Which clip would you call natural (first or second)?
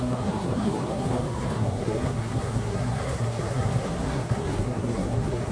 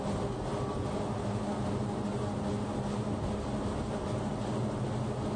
second